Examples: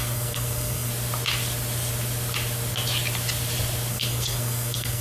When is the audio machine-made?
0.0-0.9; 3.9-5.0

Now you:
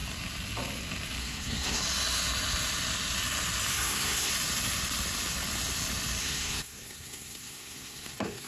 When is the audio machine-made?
1.2-1.8; 3.7-4.3; 6.2-8.5

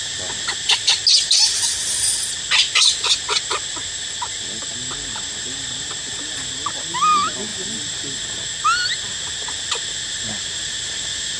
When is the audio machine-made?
7.5-8.2

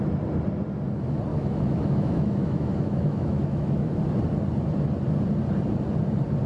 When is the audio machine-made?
1.3-4.0